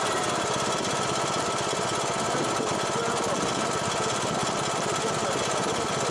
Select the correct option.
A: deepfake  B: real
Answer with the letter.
B